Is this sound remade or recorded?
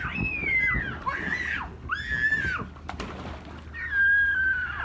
recorded